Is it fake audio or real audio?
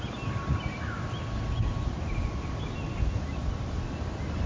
real